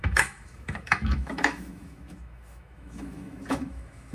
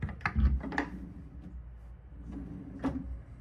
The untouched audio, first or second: second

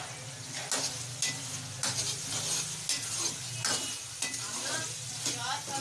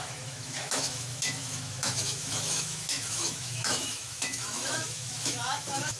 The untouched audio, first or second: first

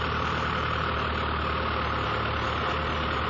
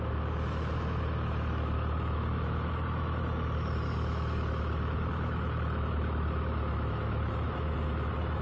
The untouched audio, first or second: first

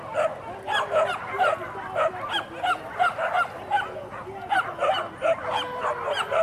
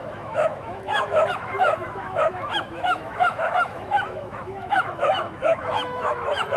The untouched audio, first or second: first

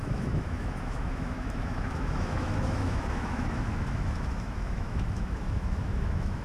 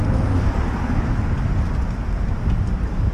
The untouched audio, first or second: second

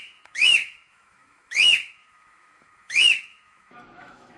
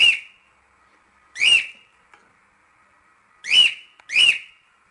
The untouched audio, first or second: second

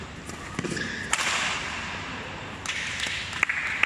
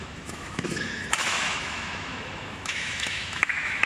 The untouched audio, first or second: first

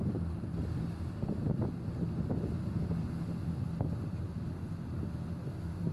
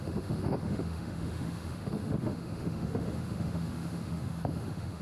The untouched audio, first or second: first